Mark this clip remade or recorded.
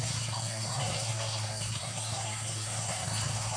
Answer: remade